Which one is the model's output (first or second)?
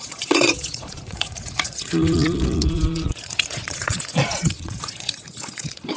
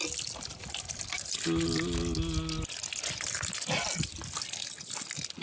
first